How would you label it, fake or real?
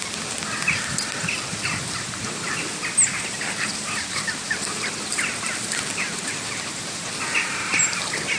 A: fake